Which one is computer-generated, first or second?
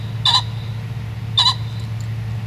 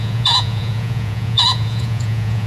second